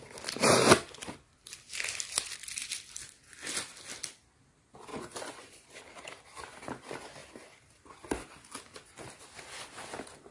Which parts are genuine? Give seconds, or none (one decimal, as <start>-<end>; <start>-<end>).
0.0-4.9; 5.8-10.3